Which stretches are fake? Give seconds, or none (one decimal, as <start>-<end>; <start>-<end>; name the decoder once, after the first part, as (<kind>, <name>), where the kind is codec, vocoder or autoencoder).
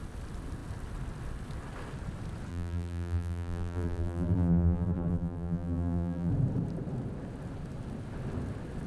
2.5-6.3 (vocoder, BigVGAN v2)